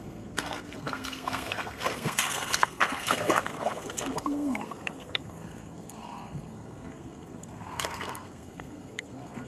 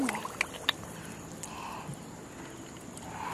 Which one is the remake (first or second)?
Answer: first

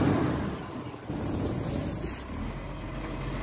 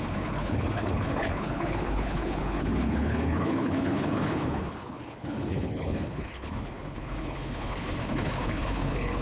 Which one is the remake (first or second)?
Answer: second